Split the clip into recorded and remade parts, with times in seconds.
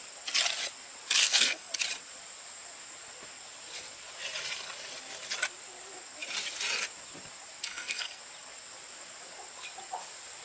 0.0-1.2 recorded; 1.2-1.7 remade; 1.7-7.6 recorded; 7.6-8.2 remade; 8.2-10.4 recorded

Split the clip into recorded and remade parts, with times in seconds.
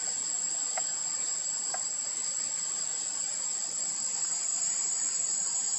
0.0-5.8 recorded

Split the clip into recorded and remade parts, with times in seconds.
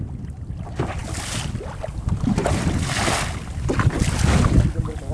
0.0-5.1 recorded